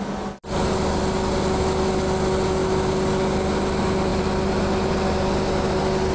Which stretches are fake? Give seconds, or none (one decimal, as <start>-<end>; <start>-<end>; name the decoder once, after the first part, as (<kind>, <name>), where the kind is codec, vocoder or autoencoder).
none